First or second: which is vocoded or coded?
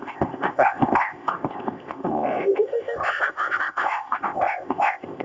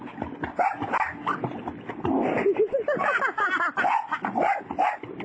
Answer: first